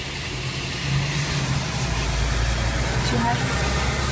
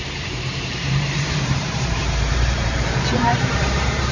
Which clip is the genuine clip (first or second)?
first